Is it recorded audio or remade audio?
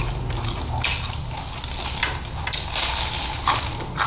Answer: recorded